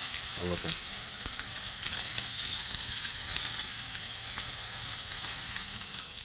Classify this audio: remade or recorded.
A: remade